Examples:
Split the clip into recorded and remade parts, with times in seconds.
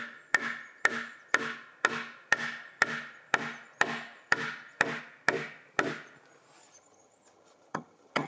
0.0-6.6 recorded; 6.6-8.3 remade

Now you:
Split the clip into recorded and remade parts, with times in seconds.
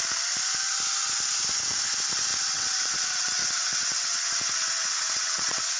0.0-2.3 recorded; 2.3-5.8 remade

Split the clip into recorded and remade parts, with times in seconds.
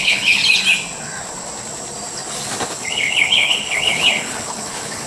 0.0-0.4 remade; 0.4-2.7 recorded; 2.7-5.1 remade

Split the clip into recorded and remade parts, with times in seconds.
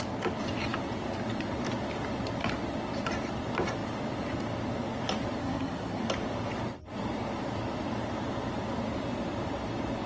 0.0-5.4 recorded; 5.4-6.0 remade; 6.0-10.1 recorded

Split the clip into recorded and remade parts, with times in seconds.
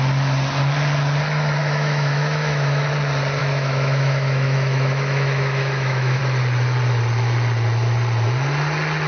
0.0-1.6 recorded; 1.6-2.9 remade; 2.9-3.4 recorded; 3.4-6.2 remade; 6.2-9.1 recorded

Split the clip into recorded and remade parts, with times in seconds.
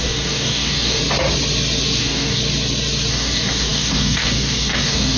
0.0-1.0 remade; 1.0-2.0 recorded; 2.0-2.4 remade; 2.4-3.1 recorded; 3.1-5.2 remade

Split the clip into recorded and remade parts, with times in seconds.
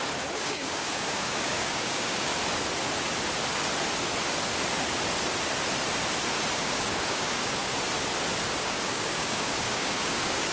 0.0-2.3 remade; 2.3-6.5 recorded; 6.5-7.6 remade; 7.6-8.6 recorded; 8.6-10.5 remade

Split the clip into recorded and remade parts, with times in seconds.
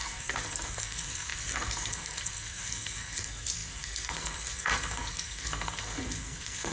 0.0-6.7 remade